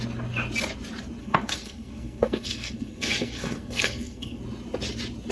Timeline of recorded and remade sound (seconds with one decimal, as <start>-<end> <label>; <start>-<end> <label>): 0.0-1.2 recorded; 1.2-4.4 remade; 4.4-5.3 recorded